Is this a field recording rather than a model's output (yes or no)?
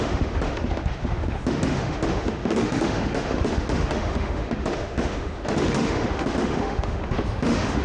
no